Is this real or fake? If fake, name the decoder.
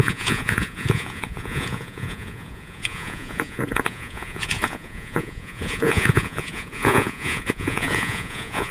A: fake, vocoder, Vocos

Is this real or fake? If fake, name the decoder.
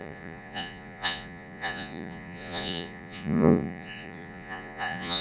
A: fake, vocoder, Vocos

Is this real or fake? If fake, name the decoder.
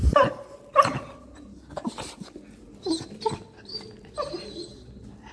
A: real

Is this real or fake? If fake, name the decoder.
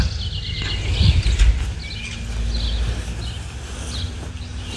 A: real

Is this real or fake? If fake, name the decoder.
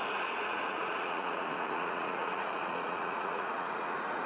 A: fake, vocoder, Vocos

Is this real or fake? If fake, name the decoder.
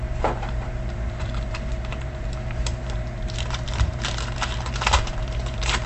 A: fake, vocoder, BigVGAN v2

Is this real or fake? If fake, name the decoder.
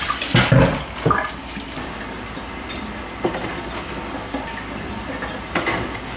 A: real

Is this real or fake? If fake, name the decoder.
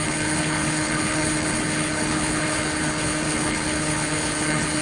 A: fake, codec, HILCodec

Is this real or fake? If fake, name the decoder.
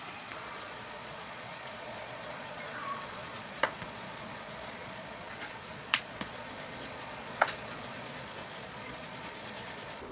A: fake, vocoder, Vocos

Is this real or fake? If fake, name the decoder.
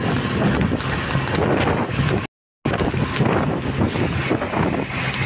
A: real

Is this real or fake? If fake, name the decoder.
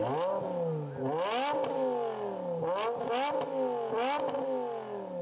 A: real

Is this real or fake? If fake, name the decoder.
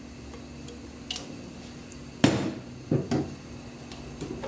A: real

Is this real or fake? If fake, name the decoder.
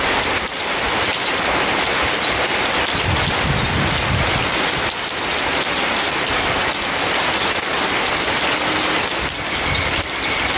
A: real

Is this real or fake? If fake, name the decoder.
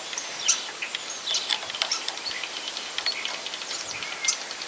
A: real